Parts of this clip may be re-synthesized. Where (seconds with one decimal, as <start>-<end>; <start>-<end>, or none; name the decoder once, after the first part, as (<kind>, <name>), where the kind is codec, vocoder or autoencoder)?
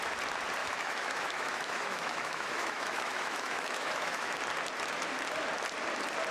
0.6-4.4 (autoencoder, DAC-VAE)